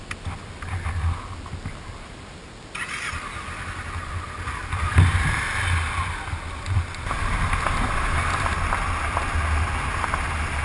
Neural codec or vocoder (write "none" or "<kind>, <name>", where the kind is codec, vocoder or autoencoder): none